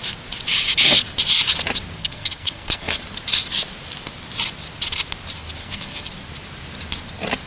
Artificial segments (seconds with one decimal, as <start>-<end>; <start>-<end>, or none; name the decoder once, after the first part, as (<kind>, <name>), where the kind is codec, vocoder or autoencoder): 2.0-3.0 (codec, SNAC); 5.6-6.1